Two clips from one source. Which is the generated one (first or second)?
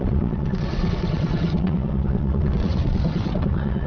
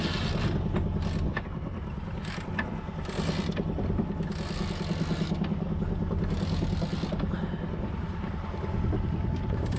first